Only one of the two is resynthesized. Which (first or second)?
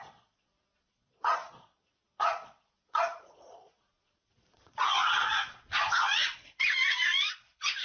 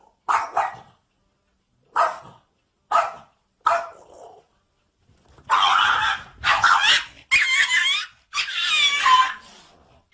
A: first